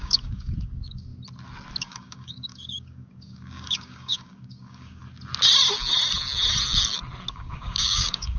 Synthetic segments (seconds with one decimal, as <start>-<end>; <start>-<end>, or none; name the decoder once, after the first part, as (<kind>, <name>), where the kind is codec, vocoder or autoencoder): 0.0-1.1 (codec, DAC); 1.8-5.0; 7.3-8.4